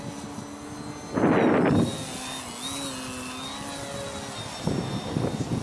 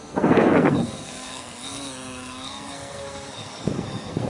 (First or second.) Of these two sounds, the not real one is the second